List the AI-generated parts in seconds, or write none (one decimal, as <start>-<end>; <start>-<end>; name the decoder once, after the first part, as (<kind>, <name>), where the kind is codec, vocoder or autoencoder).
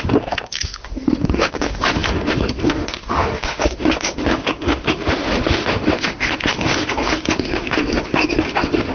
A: 0.0-8.9 (autoencoder, DAC-VAE)